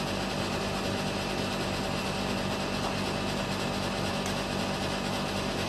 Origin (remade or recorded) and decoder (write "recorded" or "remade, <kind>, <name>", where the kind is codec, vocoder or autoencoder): recorded